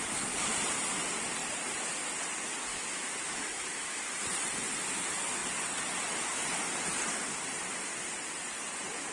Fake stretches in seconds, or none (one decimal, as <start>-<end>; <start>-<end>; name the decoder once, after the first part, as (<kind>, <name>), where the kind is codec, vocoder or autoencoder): 2.7-4.1 (autoencoder, DAC-VAE)